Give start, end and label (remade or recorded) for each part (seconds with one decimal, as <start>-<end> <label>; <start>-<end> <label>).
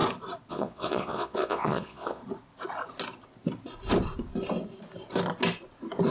0.0-0.5 recorded; 0.5-2.2 remade; 2.2-6.1 recorded